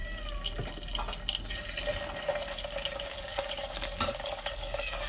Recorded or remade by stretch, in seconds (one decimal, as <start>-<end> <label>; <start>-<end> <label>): 0.0-3.1 recorded; 3.1-5.1 remade